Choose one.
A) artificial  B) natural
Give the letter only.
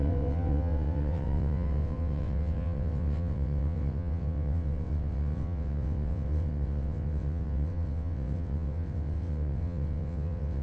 A